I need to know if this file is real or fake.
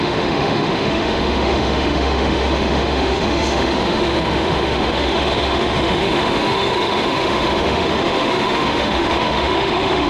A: fake